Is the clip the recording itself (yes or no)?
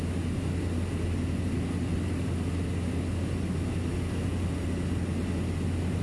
yes